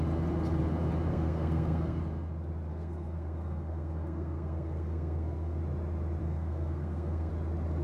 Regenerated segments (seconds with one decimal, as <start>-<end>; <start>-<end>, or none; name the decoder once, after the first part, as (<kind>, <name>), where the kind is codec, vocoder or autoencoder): 1.1-2.0 (codec, SNAC); 2.7-5.6; 6.2-7.3